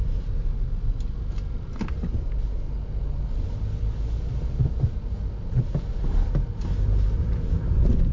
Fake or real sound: real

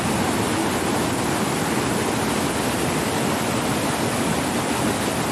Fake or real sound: real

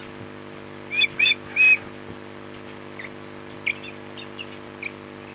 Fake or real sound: real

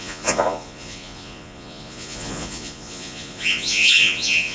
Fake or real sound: fake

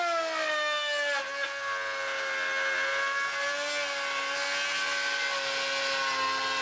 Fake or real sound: real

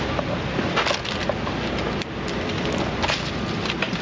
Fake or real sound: real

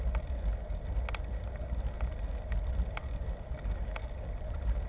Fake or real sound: real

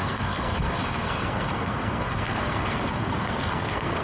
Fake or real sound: fake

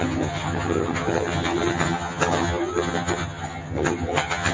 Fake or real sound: fake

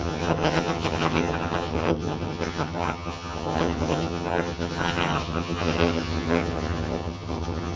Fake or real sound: fake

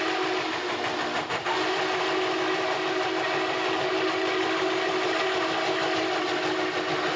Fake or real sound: real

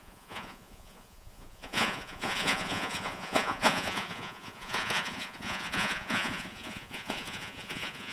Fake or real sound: fake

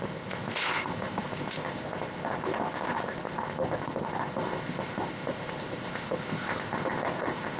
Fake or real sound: fake